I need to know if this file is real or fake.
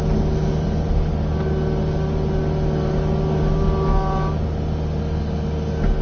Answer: real